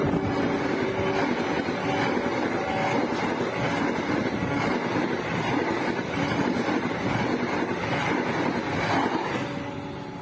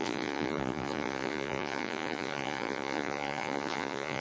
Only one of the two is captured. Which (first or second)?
first